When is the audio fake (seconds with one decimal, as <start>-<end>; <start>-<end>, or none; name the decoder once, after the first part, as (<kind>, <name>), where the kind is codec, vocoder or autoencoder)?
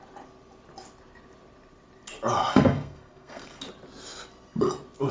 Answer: 2.4-3.6 (codec, SNAC)